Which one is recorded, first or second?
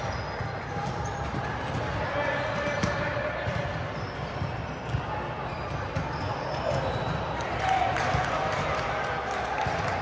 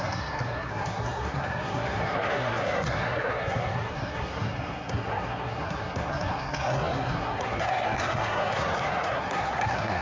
first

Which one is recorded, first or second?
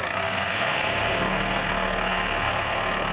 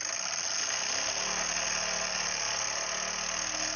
second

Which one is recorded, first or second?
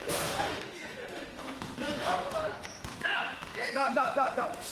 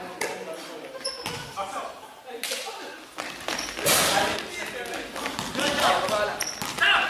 second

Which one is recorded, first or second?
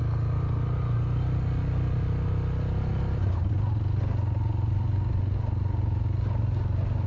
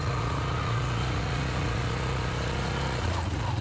first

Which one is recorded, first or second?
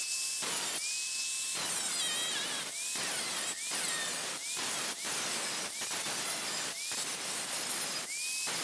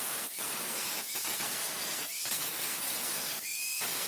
first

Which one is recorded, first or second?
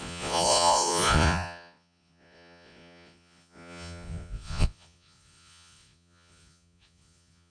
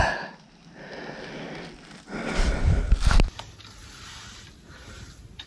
second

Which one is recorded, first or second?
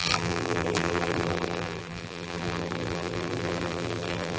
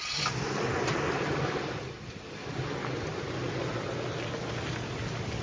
second